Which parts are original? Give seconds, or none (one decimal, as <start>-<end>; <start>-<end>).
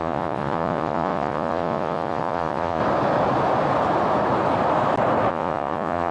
2.8-5.3